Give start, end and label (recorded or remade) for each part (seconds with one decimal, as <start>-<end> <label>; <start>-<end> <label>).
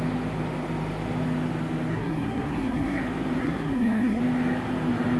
0.0-1.9 recorded; 1.9-3.0 remade; 3.0-3.4 recorded; 3.4-4.2 remade; 4.2-5.2 recorded